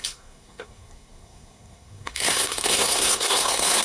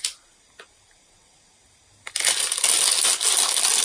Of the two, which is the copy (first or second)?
first